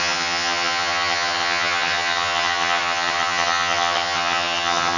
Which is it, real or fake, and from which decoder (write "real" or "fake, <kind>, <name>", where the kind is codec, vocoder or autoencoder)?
fake, vocoder, HiFi-GAN